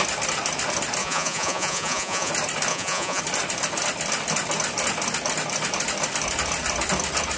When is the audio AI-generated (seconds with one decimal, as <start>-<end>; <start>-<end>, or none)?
1.0-2.3; 2.7-3.2